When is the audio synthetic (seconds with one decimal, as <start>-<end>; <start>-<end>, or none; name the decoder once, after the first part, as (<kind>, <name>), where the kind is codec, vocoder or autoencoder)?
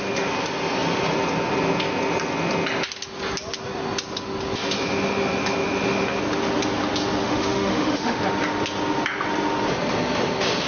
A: 7.2-8.2 (autoencoder, DAC-VAE)